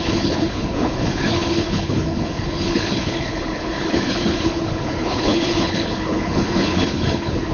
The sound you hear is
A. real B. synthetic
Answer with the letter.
B